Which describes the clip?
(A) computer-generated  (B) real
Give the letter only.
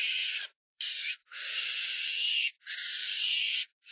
A